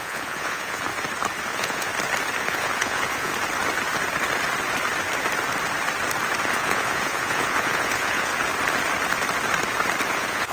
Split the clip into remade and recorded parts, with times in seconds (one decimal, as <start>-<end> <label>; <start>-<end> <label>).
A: 0.0-0.9 remade; 0.9-1.5 recorded; 1.5-1.9 remade; 1.9-2.4 recorded; 2.4-3.3 remade; 3.3-6.4 recorded; 6.4-8.3 remade; 8.3-10.1 recorded; 10.1-10.5 remade